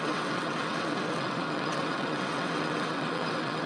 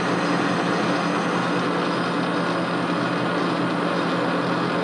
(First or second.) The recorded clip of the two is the second